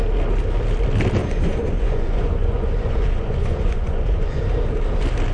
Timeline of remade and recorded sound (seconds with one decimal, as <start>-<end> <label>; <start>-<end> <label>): 0.0-1.2 recorded; 1.2-4.4 remade; 4.4-5.3 recorded